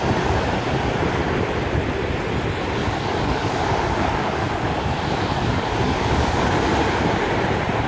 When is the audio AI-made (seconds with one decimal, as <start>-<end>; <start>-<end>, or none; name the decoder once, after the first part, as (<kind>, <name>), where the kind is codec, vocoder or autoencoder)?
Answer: 2.8-6.4 (codec, DAC)